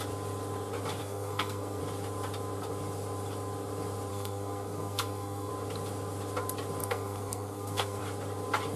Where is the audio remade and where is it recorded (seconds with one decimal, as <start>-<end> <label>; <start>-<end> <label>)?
0.0-1.0 recorded; 1.0-1.8 remade; 1.8-4.1 recorded; 4.1-5.5 remade; 5.5-6.8 recorded; 6.8-8.0 remade; 8.0-8.8 recorded